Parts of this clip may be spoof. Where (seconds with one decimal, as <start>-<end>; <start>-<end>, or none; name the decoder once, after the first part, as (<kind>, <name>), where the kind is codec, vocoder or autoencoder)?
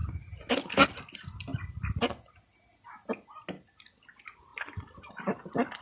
none